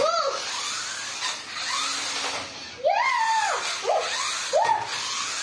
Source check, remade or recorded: recorded